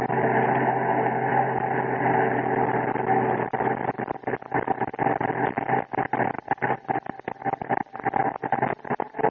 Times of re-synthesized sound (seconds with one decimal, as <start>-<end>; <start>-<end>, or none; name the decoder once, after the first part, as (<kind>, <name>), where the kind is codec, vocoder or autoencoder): none